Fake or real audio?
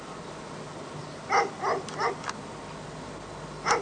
real